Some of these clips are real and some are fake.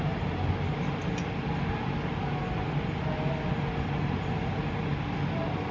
real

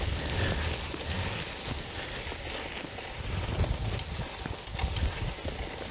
real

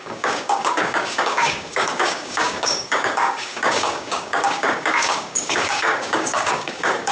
fake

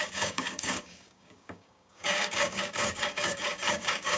fake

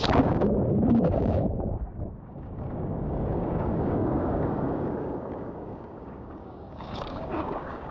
fake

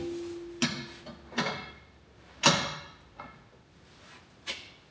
real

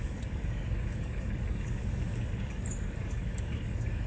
fake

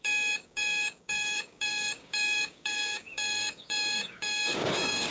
fake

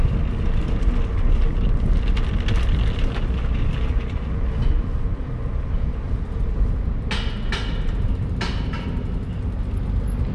real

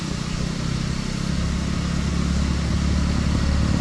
real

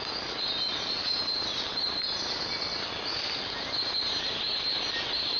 real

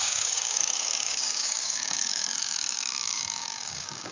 fake